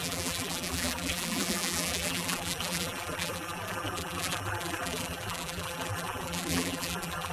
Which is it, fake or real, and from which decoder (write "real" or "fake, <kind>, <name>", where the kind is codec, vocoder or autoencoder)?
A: fake, vocoder, BigVGAN v2